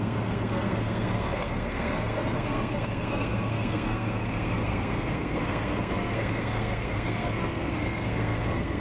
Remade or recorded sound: remade